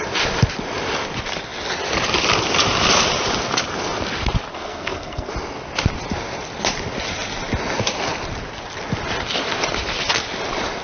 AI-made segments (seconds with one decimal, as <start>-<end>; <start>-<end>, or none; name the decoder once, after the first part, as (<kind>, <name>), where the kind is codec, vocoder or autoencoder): 4.5-5.3 (codec, SNAC)

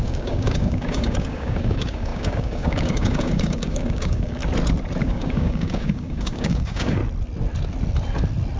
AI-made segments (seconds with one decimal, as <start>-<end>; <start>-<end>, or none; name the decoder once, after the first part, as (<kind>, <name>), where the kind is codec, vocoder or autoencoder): 0.0-4.4 (codec, DAC); 5.0-7.0

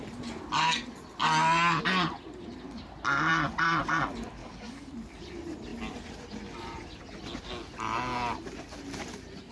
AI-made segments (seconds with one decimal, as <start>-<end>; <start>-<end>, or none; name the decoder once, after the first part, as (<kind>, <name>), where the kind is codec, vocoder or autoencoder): 4.4-4.9 (codec, DAC)

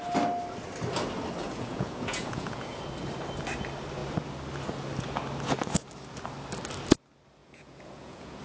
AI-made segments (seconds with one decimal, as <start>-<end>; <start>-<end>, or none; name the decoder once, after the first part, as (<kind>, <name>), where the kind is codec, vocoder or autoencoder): 1.4-2.8 (vocoder, Vocos); 7.4-8.4

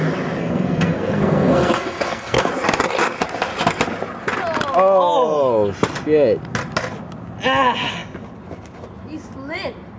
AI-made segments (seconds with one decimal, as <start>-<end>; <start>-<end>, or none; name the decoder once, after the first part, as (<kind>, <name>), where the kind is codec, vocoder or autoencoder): 0.4-2.5 (codec, SNAC)

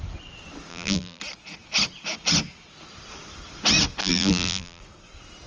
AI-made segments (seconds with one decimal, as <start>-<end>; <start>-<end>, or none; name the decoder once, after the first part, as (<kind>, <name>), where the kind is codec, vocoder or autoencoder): 0.7-1.2 (vocoder, BigVGAN v2); 4.0-4.8

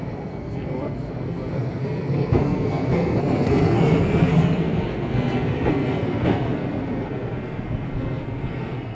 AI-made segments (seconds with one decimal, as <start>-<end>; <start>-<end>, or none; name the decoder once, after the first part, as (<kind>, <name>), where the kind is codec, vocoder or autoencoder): 0.0-8.9 (codec, SNAC)

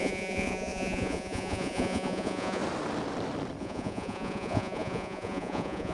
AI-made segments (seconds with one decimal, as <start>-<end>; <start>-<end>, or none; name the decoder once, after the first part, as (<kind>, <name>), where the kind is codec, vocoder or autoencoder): 0.0-2.6 (vocoder, Vocos); 3.6-5.9